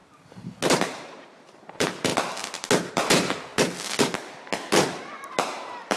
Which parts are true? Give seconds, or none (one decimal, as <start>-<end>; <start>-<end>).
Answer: 0.0-0.7; 2.1-2.9; 3.5-5.4